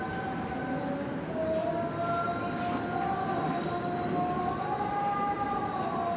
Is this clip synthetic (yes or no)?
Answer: no